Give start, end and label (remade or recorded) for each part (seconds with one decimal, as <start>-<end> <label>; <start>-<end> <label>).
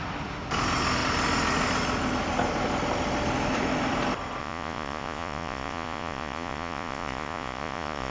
0.0-4.4 recorded; 4.4-8.1 remade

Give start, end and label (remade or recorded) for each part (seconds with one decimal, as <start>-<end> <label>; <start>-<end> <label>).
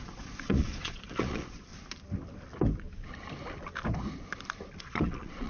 0.0-1.7 remade; 1.7-4.8 recorded; 4.8-5.5 remade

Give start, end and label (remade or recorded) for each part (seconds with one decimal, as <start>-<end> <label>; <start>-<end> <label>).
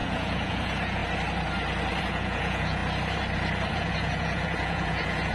0.0-1.0 remade; 1.0-2.0 recorded; 2.0-2.8 remade; 2.8-3.7 recorded; 3.7-5.3 remade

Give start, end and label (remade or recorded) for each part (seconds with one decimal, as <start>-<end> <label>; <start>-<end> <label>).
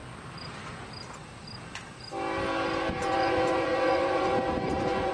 0.0-3.0 recorded; 3.0-5.1 remade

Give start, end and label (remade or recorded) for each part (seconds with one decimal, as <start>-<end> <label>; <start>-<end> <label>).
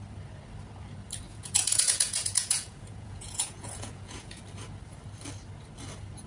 0.0-1.3 recorded; 1.3-4.4 remade; 4.4-6.3 recorded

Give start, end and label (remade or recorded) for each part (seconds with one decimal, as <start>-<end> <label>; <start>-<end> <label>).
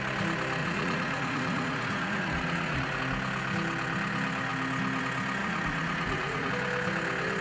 0.0-0.6 recorded; 0.6-3.0 remade; 3.0-5.4 recorded; 5.4-6.5 remade; 6.5-7.4 recorded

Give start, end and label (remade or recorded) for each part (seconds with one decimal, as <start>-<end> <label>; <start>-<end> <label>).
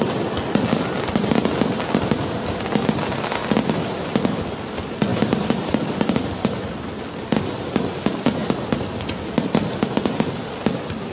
0.0-11.1 recorded